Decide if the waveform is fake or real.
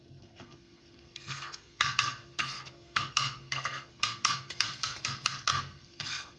fake